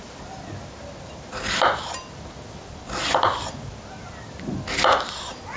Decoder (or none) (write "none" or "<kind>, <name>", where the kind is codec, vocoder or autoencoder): none